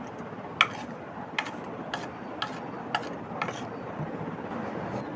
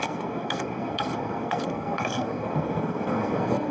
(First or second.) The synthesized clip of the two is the second